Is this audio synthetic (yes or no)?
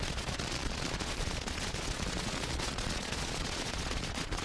yes